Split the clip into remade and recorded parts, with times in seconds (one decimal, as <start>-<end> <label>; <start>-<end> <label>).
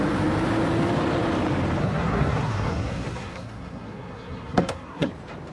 0.0-1.8 recorded; 1.8-5.1 remade; 5.1-5.5 recorded